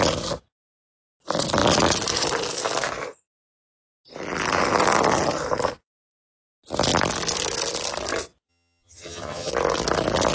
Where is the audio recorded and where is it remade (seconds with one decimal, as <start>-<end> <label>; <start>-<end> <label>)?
0.0-8.5 recorded; 8.5-9.5 remade; 9.5-10.3 recorded